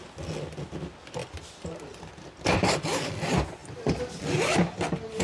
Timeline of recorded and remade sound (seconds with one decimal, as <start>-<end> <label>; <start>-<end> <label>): 0.0-1.2 recorded; 1.2-3.2 remade; 3.2-3.6 recorded; 3.6-5.2 remade